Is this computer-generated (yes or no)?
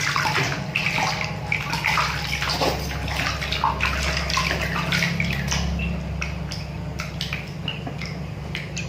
no